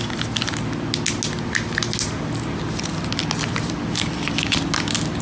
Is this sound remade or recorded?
recorded